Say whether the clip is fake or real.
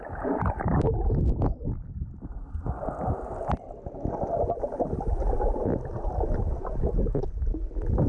real